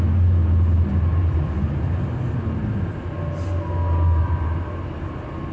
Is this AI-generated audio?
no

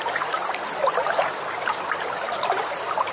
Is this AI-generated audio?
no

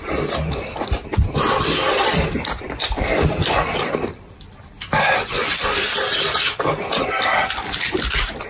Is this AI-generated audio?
yes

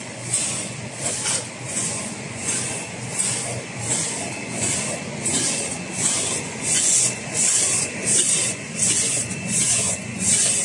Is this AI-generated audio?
yes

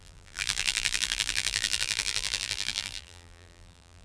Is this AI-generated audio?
yes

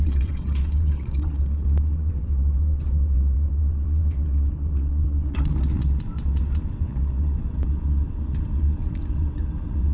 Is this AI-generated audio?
yes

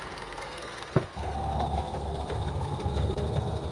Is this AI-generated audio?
yes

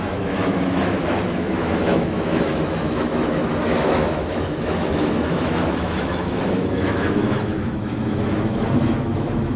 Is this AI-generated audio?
yes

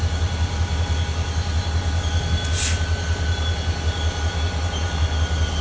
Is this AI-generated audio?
no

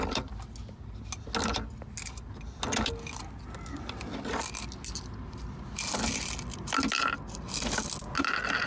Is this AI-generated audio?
no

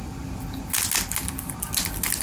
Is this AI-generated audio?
no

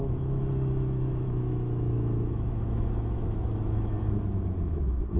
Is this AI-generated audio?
yes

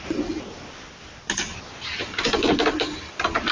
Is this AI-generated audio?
no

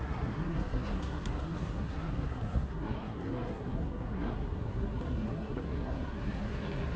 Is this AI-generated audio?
yes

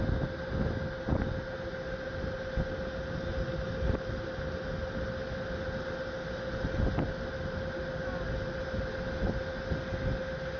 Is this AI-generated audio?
no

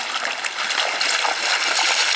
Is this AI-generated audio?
no